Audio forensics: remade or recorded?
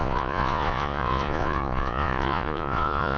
remade